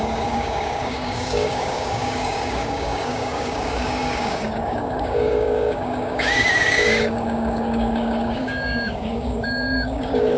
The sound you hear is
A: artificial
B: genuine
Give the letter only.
A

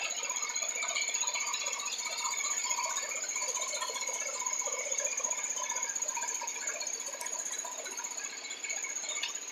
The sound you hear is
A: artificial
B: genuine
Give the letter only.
B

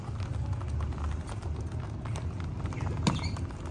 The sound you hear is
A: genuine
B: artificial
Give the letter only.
A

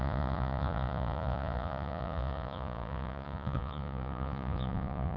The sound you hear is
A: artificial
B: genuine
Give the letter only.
A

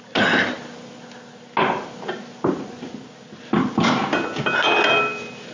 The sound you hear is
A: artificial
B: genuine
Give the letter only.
B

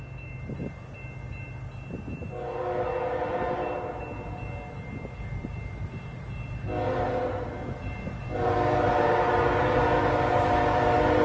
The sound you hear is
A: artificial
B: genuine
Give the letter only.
B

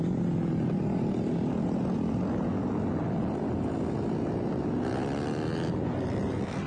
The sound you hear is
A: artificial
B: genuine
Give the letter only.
B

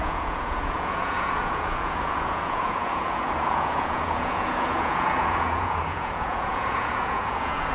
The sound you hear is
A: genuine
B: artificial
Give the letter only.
B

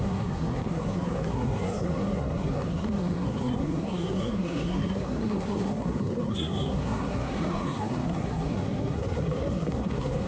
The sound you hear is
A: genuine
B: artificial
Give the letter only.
B